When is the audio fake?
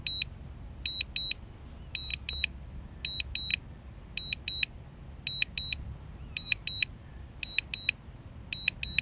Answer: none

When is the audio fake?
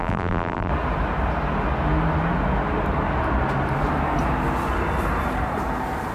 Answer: 0.0-0.7 (vocoder, BigVGAN v2)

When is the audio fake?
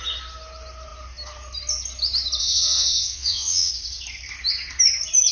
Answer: 2.4-3.7 (vocoder, WaveNeXt)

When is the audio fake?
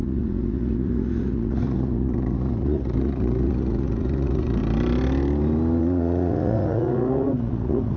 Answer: 0.0-4.6 (vocoder, Vocos); 5.8-8.0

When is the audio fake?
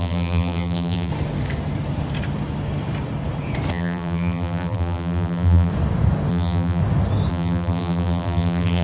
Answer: 0.0-1.1 (vocoder, BigVGAN v2); 3.7-5.7; 6.3-6.8; 7.3-8.8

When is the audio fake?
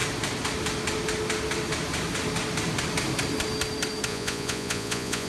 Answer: 4.1-5.3 (vocoder, Vocos)